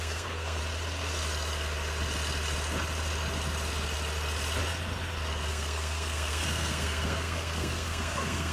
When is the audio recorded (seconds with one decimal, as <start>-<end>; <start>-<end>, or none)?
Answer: 0.6-5.5